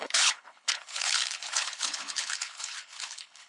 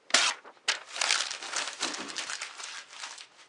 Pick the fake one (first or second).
first